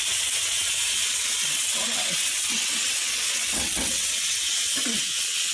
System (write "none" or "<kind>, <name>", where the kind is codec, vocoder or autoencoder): vocoder, WaveNeXt